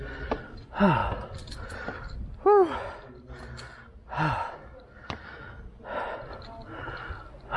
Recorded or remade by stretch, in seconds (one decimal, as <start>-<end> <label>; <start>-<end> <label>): 0.0-7.6 recorded